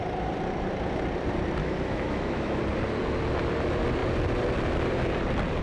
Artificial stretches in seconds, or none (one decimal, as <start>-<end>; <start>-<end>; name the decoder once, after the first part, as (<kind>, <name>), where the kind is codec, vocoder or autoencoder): 1.6-2.6 (autoencoder, DAC-VAE)